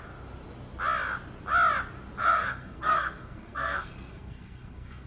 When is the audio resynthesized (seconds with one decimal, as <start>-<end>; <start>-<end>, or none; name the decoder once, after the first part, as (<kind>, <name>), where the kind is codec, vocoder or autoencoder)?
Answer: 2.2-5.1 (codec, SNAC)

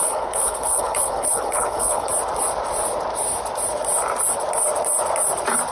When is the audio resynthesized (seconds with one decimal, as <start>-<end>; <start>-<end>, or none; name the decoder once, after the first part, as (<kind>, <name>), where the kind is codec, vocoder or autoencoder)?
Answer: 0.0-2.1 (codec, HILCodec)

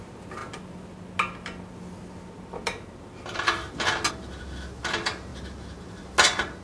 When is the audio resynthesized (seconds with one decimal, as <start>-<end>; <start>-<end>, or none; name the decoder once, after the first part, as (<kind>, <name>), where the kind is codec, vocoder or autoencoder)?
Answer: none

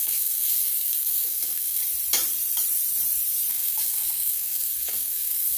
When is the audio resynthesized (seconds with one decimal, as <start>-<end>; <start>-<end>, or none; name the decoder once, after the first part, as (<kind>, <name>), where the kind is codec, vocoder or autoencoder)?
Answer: 0.0-1.8 (codec, SNAC); 3.5-5.6